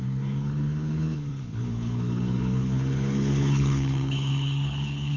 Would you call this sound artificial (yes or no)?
yes